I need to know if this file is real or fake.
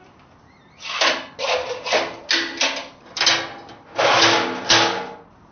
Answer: real